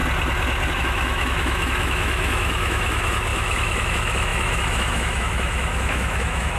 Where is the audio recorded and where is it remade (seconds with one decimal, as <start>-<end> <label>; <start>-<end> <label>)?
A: 0.0-0.7 recorded; 0.7-6.6 remade